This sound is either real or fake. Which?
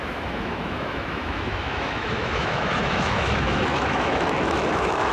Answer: fake